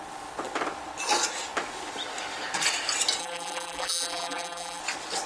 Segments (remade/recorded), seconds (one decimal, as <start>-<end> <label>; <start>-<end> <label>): 0.0-3.2 recorded; 3.2-4.8 remade; 4.8-5.3 recorded